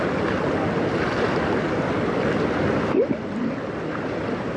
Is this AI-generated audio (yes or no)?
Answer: no